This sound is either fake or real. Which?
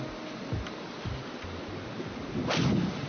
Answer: real